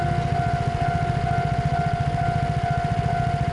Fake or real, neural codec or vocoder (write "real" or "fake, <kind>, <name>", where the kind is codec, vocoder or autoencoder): real